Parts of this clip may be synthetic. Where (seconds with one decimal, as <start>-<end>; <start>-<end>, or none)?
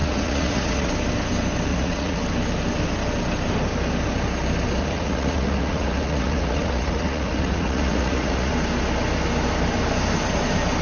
0.0-0.9; 1.7-2.2; 4.8-8.5